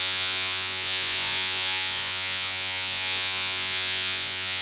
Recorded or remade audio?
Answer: remade